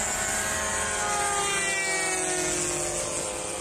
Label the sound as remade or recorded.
recorded